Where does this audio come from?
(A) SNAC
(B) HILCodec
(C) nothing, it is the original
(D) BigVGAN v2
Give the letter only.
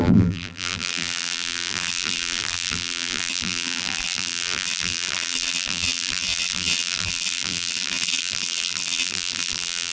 D